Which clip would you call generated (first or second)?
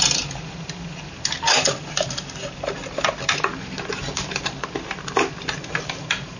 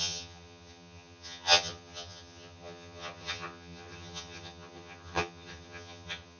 second